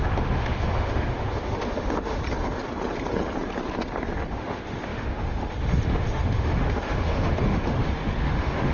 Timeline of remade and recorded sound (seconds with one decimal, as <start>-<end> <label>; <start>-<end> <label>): 0.0-2.2 remade; 2.2-4.3 recorded; 4.3-8.7 remade